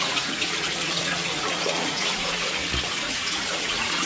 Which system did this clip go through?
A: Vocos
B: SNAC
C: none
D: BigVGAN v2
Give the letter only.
A